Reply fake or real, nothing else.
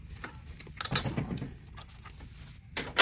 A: real